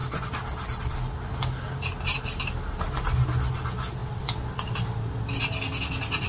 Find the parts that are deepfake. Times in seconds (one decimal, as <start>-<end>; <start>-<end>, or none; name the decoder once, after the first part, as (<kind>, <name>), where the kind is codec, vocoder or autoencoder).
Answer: none